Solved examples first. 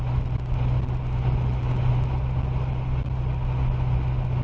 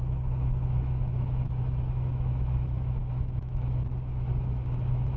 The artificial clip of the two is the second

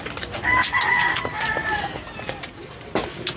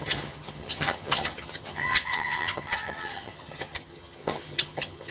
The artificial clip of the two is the second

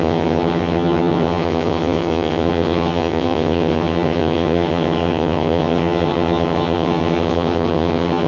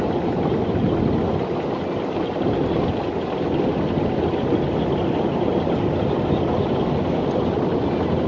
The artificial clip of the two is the first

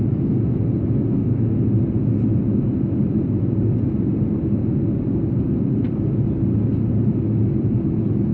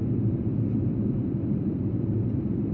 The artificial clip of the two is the second